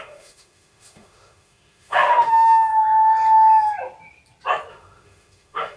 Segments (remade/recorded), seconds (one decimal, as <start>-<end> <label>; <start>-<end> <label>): 0.0-2.7 remade; 2.7-4.7 recorded; 4.7-5.8 remade